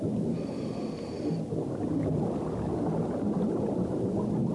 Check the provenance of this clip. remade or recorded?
recorded